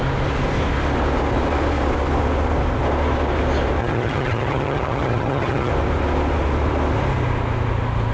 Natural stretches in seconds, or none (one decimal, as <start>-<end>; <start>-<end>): 0.0-3.8; 5.7-8.1